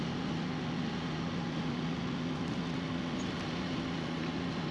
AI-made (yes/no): no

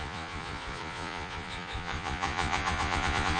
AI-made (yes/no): yes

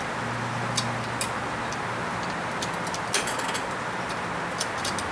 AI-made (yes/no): no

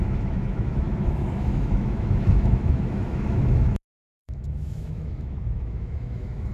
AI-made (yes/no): yes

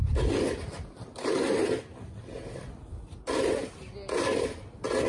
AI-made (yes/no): no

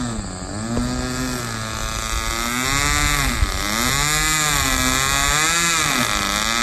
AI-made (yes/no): no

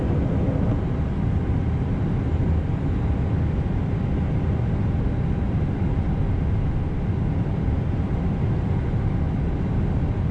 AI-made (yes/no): no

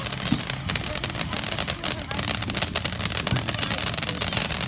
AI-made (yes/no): no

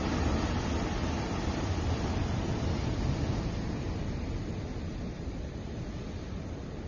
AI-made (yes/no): no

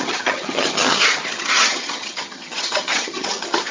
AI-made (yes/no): yes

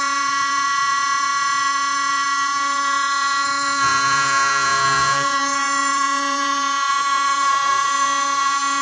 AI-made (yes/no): yes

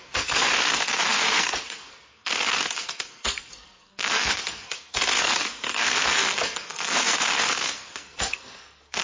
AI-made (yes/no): yes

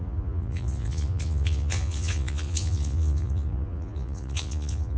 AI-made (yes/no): yes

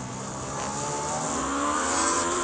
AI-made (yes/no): no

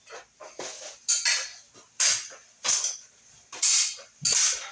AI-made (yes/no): no